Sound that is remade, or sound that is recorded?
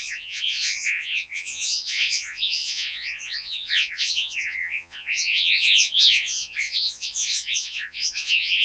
remade